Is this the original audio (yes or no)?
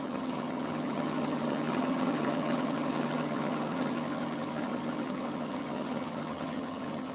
no